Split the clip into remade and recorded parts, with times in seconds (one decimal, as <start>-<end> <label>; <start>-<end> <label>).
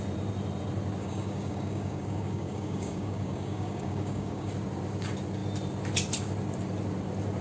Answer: 0.0-1.0 recorded; 1.0-4.5 remade; 4.5-7.4 recorded